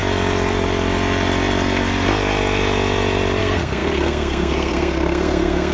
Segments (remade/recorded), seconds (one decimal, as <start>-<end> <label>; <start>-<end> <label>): 0.0-3.4 recorded; 3.4-5.7 remade